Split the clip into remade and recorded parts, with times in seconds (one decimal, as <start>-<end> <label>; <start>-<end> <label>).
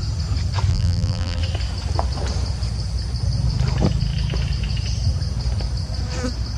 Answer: 0.0-0.7 recorded; 0.7-1.4 remade; 1.4-6.6 recorded